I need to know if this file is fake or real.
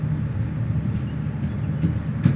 real